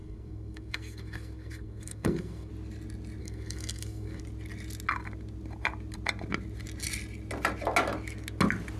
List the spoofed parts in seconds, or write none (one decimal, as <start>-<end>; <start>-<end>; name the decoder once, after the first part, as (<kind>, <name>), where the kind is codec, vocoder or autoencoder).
0.0-2.5 (codec, SNAC); 3.2-4.2